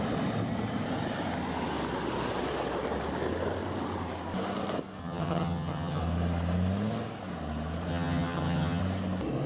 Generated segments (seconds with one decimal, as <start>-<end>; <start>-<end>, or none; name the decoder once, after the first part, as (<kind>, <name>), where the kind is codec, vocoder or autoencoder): 5.0-6.0 (vocoder, HiFi-GAN); 7.9-8.8